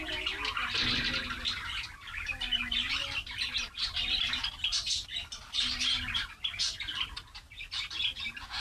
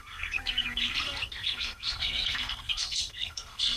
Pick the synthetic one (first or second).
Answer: second